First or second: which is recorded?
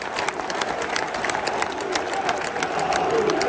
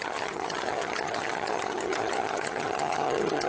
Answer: first